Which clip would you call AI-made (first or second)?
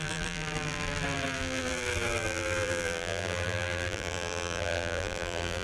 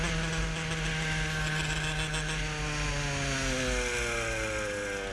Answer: first